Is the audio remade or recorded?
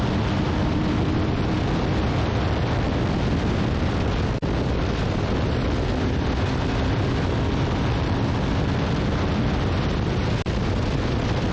recorded